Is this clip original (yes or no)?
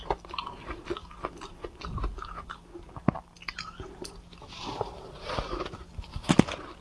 yes